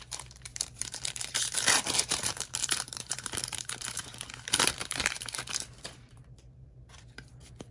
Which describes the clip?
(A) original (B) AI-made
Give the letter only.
B